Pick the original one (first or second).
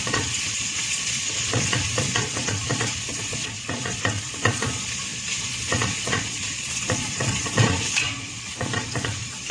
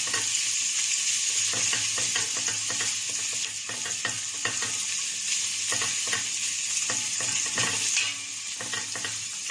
second